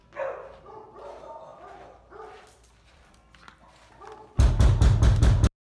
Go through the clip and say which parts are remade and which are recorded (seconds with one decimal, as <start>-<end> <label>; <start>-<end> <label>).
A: 0.0-5.8 recorded